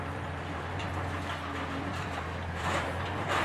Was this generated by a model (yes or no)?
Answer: yes